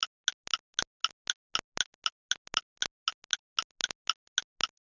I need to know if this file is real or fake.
real